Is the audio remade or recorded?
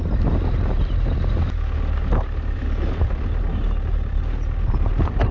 recorded